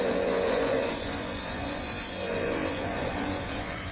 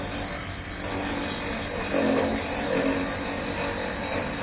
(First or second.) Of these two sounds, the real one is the second